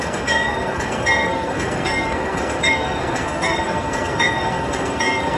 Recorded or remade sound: remade